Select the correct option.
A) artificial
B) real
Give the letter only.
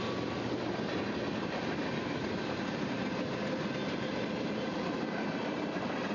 B